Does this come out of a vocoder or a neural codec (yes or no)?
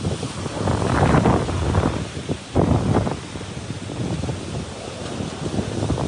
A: no